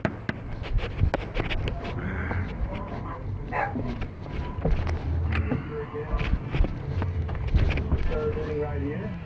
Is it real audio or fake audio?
real